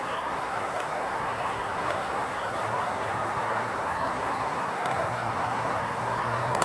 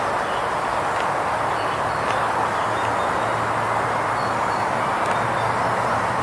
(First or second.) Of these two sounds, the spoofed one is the first